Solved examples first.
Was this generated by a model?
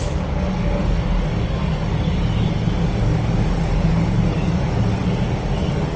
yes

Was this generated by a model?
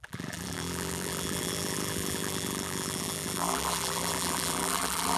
yes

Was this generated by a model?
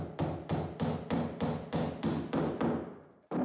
no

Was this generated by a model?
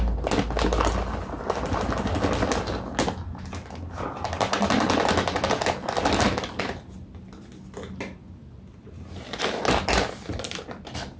no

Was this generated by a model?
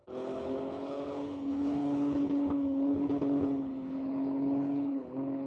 yes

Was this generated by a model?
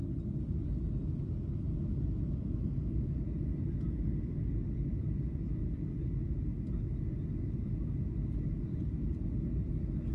no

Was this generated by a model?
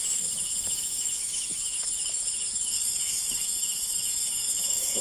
yes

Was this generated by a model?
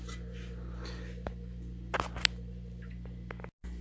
no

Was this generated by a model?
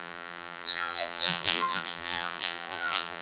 yes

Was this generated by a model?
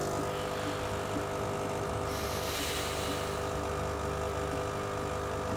no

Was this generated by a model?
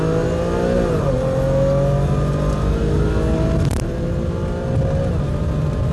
no